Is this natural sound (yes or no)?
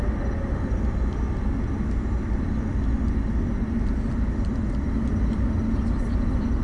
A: yes